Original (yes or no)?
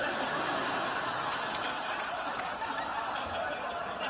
yes